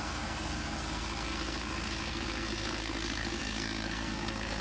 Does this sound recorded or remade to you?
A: remade